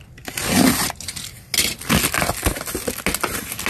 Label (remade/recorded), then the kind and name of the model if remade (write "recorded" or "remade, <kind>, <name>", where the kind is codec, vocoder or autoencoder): recorded